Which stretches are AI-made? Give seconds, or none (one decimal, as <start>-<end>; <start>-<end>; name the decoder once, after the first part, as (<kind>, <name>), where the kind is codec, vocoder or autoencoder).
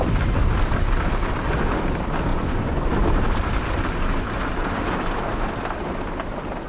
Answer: 2.3-2.9 (vocoder, Vocos)